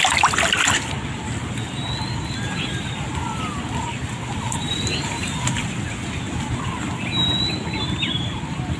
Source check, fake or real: real